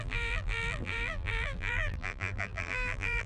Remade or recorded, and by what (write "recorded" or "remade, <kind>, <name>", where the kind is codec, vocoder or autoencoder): remade, vocoder, BigVGAN v2